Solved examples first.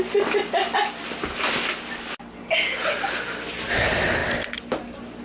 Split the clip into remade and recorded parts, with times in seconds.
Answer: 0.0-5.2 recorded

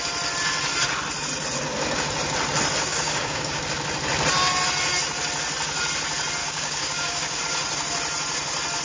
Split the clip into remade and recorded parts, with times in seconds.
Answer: 0.0-2.9 recorded; 2.9-3.6 remade; 3.6-6.4 recorded; 6.4-7.4 remade; 7.4-8.8 recorded

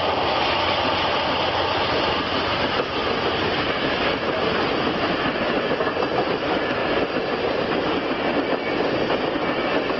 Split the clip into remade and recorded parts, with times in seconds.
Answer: 0.0-10.0 recorded

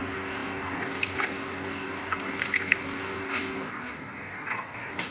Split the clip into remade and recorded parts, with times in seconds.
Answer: 0.0-5.1 remade

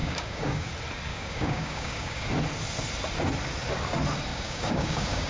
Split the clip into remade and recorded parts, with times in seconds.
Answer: 0.0-0.7 remade; 0.7-1.1 recorded; 1.1-2.3 remade; 2.3-4.3 recorded; 4.3-5.3 remade

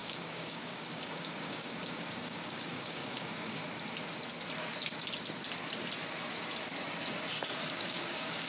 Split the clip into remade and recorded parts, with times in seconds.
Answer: 0.0-3.6 remade; 3.6-7.7 recorded; 7.7-8.5 remade

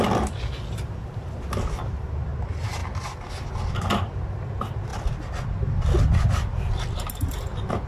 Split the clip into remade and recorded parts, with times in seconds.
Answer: 0.0-7.9 recorded